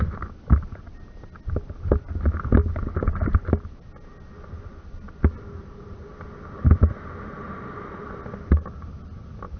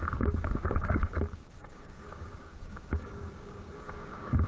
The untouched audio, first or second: first